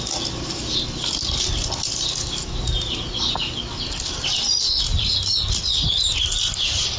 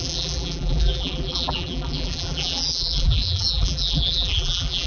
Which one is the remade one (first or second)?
second